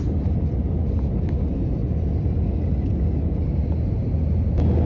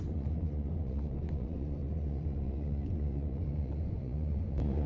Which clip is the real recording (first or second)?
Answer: first